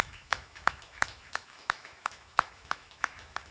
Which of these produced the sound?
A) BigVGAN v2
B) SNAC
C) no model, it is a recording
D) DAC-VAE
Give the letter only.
D